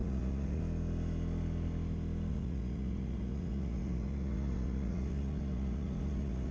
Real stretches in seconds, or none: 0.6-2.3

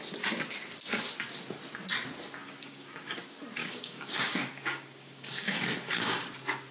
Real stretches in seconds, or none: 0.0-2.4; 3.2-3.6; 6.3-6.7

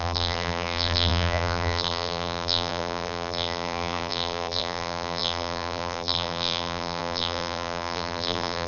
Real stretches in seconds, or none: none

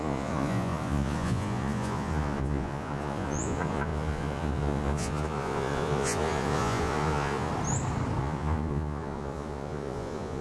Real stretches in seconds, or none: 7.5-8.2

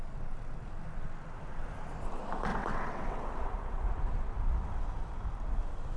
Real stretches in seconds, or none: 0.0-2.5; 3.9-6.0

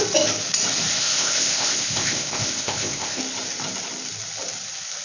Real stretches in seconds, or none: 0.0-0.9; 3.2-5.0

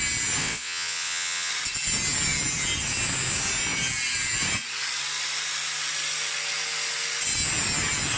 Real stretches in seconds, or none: 0.0-0.4; 1.5-8.2

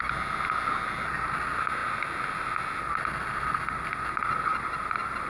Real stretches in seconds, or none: 0.0-5.3